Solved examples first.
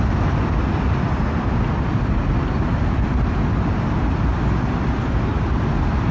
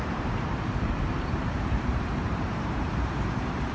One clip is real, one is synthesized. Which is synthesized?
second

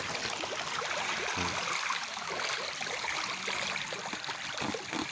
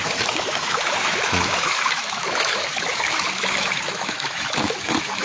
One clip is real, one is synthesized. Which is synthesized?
second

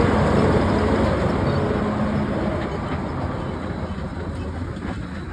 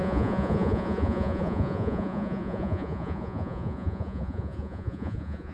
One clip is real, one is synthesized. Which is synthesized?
second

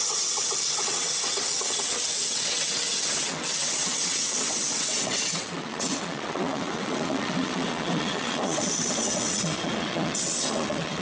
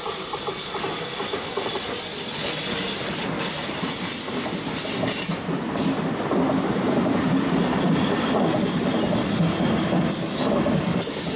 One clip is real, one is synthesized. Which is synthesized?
first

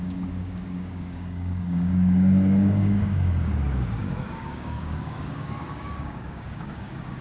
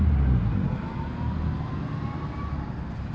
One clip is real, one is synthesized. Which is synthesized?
first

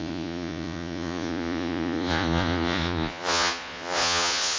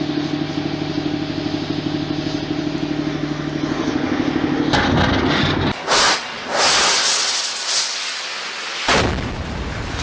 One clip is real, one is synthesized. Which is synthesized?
first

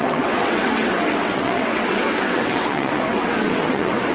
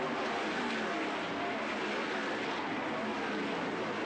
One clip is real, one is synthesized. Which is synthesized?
first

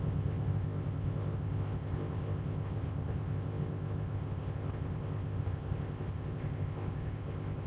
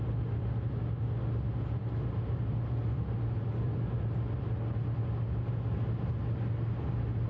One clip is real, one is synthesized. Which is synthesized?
first